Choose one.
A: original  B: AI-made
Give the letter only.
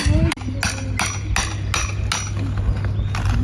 A